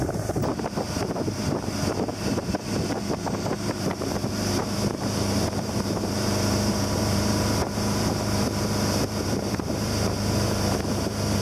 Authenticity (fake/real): fake